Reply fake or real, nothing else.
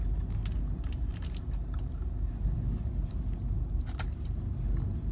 real